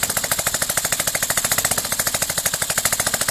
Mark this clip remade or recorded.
recorded